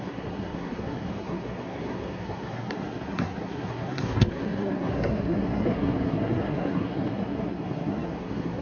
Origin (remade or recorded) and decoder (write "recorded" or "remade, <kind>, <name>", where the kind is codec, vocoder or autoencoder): remade, codec, SNAC